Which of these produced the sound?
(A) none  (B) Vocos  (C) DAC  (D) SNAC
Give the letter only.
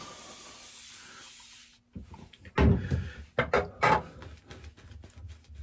A